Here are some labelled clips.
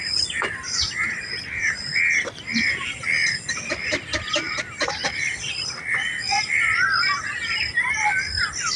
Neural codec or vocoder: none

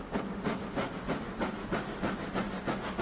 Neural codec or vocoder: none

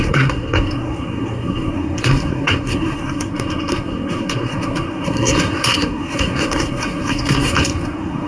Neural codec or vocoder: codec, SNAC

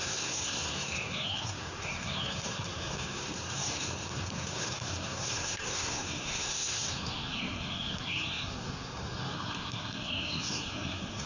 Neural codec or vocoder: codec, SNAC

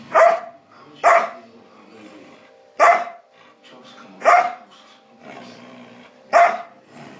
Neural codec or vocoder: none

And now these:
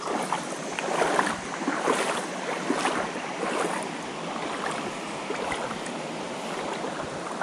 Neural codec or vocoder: none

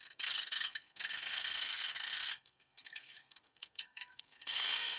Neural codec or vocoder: codec, SNAC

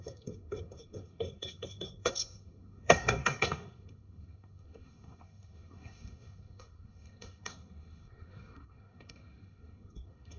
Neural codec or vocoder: codec, SNAC